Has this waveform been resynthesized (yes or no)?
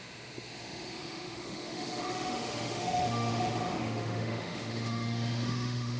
yes